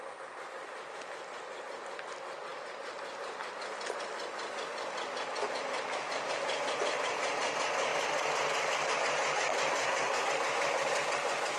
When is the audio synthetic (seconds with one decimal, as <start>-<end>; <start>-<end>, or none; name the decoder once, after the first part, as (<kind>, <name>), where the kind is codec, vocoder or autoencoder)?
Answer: 9.8-10.3 (codec, SNAC)